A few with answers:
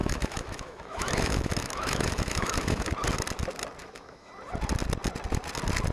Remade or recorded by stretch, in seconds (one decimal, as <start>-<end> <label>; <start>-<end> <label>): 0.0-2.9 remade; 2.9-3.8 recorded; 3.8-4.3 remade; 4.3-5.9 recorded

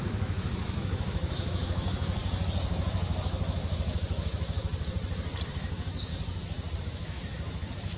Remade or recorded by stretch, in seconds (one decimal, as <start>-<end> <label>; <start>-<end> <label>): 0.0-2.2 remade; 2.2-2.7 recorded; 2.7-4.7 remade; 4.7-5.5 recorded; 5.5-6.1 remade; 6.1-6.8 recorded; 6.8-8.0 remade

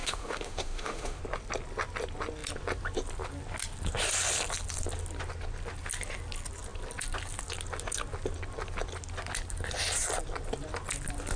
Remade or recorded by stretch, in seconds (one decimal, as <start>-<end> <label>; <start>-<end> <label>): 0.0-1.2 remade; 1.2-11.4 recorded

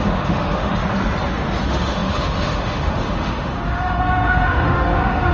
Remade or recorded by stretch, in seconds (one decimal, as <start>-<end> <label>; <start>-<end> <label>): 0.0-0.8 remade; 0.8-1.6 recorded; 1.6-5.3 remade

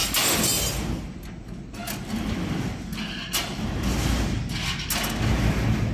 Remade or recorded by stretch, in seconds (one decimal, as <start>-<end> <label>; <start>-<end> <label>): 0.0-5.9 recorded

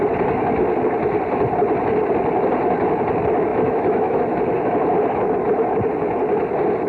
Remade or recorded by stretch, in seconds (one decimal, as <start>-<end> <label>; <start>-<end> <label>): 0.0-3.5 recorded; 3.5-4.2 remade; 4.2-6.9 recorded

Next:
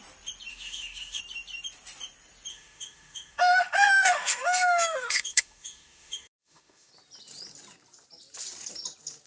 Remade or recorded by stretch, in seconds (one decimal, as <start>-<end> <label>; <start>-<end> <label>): 0.0-0.5 recorded; 0.5-1.2 remade; 1.2-2.5 recorded; 2.5-6.9 remade; 6.9-9.3 recorded

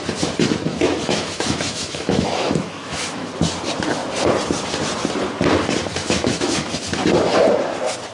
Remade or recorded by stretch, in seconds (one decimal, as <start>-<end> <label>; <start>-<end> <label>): 0.0-0.7 recorded; 0.7-3.3 remade; 3.3-6.0 recorded; 6.0-6.6 remade; 6.6-8.1 recorded